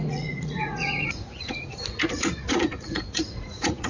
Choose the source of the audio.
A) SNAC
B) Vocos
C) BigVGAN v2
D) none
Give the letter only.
B